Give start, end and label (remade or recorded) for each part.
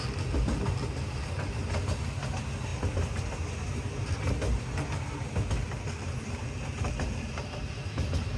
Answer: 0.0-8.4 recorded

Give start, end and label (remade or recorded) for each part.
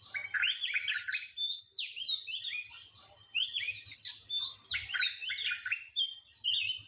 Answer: 0.0-6.9 recorded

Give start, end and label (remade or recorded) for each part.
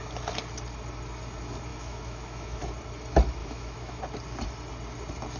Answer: 0.0-1.7 recorded; 1.7-2.6 remade; 2.6-3.4 recorded; 3.4-4.0 remade; 4.0-5.4 recorded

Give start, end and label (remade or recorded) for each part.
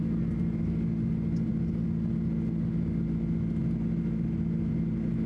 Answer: 0.0-5.3 recorded